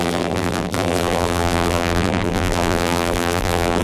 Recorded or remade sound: remade